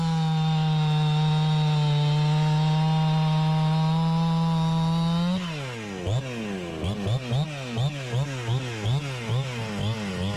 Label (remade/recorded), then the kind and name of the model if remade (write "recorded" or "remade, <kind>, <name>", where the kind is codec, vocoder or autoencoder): recorded